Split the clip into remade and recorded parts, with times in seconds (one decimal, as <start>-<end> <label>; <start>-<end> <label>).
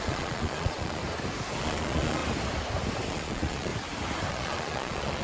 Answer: 0.0-1.0 remade; 1.0-1.6 recorded; 1.6-2.2 remade; 2.2-3.1 recorded; 3.1-3.7 remade; 3.7-4.3 recorded; 4.3-5.2 remade